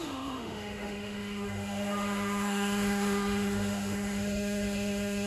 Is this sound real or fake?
fake